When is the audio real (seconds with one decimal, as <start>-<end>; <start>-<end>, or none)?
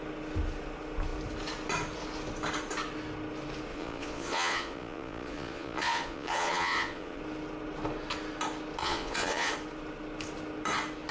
0.0-3.7; 7.2-8.8; 9.5-11.1